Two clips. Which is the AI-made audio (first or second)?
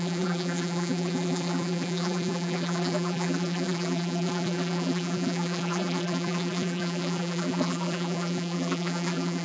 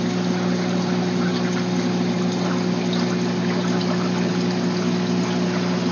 first